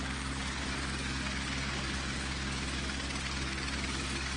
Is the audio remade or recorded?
remade